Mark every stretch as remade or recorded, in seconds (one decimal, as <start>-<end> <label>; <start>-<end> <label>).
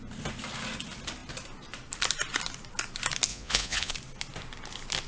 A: 0.0-3.3 recorded; 3.3-3.9 remade; 3.9-5.1 recorded